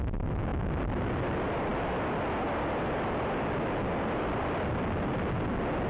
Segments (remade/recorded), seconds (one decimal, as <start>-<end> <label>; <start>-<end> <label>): 0.0-5.9 recorded